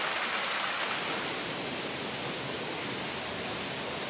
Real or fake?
real